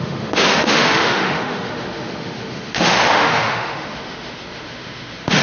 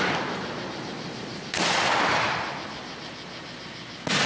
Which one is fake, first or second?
first